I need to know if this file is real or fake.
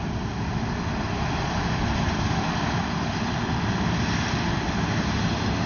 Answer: real